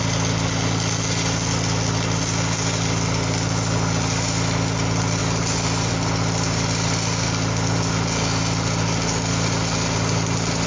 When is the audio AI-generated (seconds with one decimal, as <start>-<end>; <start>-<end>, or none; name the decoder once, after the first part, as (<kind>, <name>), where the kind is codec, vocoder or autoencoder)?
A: none